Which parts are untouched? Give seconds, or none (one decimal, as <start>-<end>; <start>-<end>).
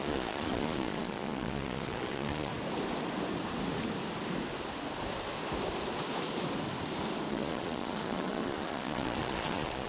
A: 2.5-7.3